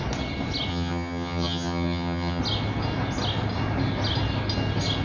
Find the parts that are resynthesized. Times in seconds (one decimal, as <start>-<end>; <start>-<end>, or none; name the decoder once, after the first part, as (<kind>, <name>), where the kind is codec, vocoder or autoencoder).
0.7-2.4 (vocoder, HiFi-GAN)